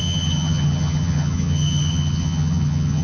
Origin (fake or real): fake